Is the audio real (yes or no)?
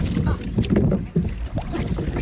yes